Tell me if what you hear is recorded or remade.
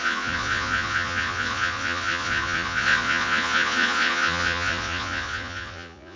remade